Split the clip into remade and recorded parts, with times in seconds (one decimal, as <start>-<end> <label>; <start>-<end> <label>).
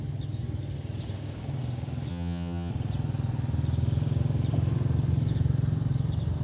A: 0.0-2.1 recorded; 2.1-2.7 remade; 2.7-6.4 recorded